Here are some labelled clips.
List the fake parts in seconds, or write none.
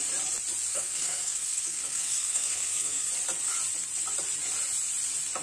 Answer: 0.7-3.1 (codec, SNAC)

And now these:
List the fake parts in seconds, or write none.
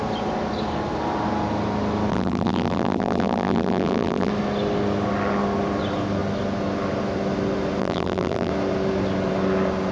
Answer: 2.1-4.3 (vocoder, BigVGAN v2); 7.8-8.5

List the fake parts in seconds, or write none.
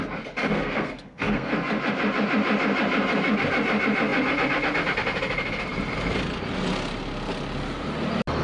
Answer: 0.4-1.5 (codec, SNAC)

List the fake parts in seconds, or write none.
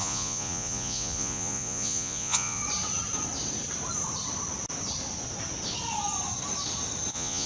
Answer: 0.0-2.6 (vocoder, Vocos); 7.1-7.5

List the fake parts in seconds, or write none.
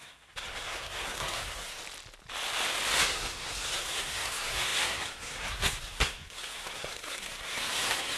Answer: 0.0-1.8 (codec, SNAC); 3.0-8.2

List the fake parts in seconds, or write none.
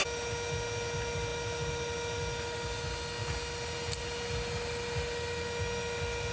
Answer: none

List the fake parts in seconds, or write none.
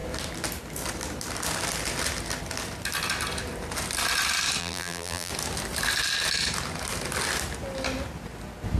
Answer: 4.6-5.3 (vocoder, BigVGAN v2)